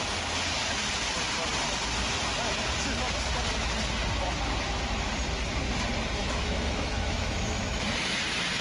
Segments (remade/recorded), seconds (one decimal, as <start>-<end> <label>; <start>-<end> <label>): 0.0-6.2 recorded; 6.2-8.2 remade; 8.2-8.6 recorded